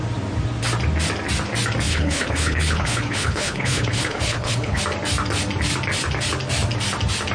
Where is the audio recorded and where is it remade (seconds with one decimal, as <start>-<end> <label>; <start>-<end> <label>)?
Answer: 0.0-1.9 recorded; 1.9-4.8 remade; 4.8-7.3 recorded